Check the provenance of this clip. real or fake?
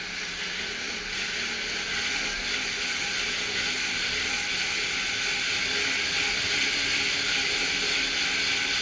real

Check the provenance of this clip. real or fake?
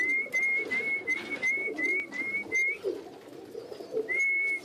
real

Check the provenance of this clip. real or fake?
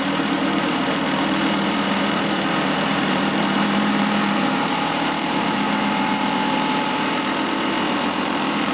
fake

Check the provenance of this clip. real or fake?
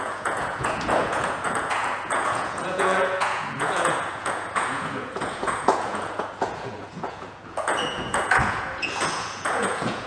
fake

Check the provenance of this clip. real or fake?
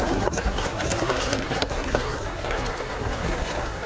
fake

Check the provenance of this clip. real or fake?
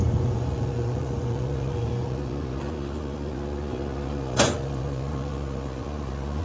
fake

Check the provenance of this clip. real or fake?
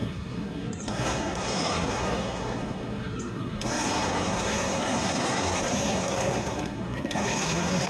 fake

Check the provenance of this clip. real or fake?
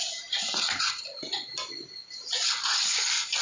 real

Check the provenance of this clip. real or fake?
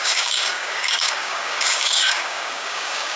fake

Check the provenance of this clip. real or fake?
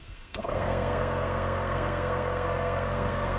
fake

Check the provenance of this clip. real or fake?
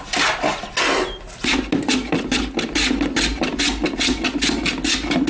real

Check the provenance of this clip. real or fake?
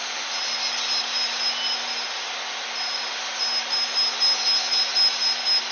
real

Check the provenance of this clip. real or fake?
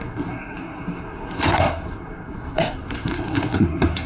fake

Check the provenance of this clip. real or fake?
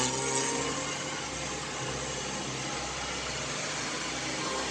real